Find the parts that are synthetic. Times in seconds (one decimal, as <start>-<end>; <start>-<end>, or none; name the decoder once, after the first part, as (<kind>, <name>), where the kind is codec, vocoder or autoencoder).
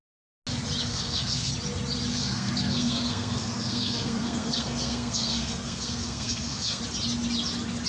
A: 0.9-1.5 (codec, SNAC); 2.1-6.8